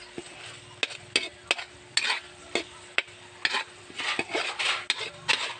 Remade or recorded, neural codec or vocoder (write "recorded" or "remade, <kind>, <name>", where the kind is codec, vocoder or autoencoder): recorded